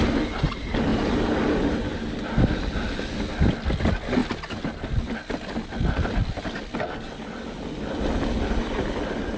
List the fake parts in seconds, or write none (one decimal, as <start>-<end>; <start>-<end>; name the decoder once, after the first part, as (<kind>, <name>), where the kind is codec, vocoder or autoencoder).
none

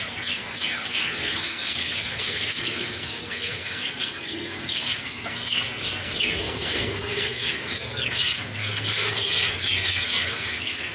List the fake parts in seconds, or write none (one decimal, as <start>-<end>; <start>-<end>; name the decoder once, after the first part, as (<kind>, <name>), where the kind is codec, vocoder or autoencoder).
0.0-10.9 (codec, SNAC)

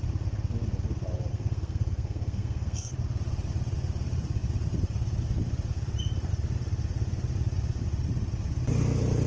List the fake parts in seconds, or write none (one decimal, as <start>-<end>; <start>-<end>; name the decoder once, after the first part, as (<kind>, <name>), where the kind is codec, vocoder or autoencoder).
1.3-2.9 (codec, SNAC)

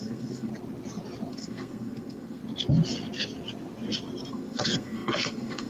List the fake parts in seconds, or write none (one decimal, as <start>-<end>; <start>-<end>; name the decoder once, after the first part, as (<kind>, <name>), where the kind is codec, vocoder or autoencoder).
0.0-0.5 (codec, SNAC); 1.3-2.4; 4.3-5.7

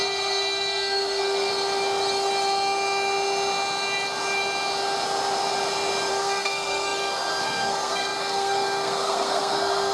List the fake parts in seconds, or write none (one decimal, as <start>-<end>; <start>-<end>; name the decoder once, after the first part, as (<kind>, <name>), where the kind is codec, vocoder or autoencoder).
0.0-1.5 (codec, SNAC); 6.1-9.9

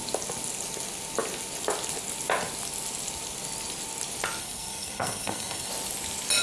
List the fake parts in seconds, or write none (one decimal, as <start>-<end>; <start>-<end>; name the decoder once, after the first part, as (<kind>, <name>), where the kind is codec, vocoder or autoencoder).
4.4-5.7 (codec, SNAC)